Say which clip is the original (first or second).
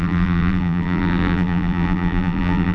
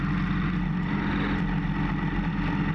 second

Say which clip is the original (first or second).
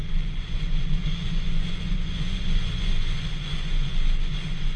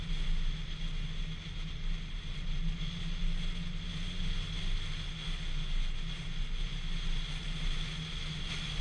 second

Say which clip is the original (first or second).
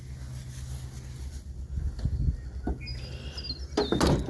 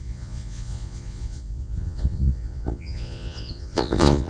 first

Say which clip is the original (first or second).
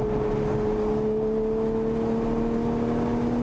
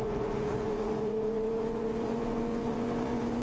first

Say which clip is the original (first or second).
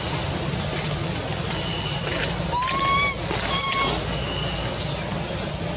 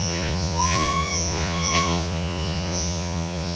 first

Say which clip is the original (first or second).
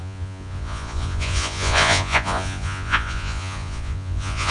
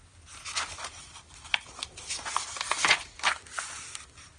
second